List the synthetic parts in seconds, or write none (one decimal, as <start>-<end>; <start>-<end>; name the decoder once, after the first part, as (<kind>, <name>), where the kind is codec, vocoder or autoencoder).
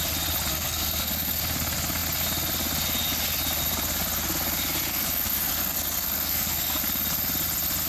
0.5-1.4 (codec, SNAC); 4.9-6.8